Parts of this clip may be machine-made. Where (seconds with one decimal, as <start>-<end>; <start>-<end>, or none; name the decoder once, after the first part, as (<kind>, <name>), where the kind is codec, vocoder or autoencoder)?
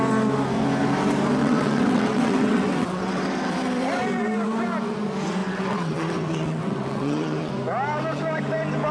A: 1.4-3.5 (vocoder, WaveNeXt); 5.4-7.5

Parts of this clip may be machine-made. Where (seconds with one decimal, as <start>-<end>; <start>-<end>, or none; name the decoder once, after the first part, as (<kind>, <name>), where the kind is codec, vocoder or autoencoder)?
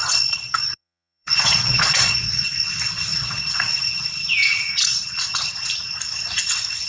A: 0.0-2.7 (vocoder, Vocos); 3.1-3.9; 4.4-5.5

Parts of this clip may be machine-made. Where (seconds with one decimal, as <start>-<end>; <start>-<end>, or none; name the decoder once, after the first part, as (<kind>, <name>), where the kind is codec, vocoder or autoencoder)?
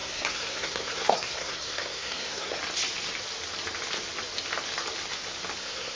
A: 0.0-2.6 (codec, SNAC); 5.6-6.0